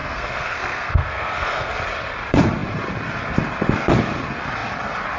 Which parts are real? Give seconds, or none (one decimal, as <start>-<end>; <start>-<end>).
1.7-5.2